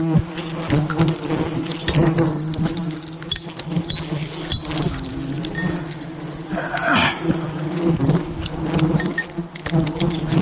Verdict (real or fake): real